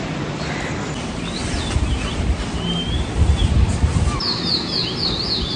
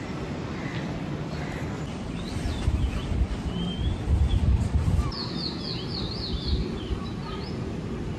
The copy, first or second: second